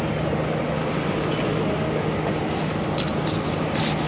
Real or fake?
real